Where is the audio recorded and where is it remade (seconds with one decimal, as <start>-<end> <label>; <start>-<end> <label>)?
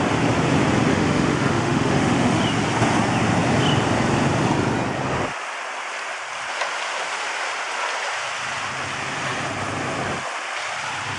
0.0-0.9 recorded; 0.9-2.4 remade; 2.4-11.2 recorded